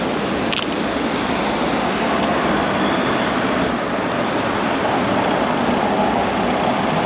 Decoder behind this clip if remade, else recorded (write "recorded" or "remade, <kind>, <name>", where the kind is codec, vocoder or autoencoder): remade, vocoder, BigVGAN v2